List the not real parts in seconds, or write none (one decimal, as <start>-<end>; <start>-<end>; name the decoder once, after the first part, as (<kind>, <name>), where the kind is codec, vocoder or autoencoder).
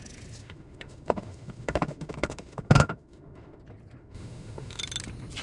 0.4-3.6 (autoencoder, DAC-VAE); 4.0-4.8